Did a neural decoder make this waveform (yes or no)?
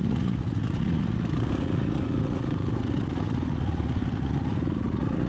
yes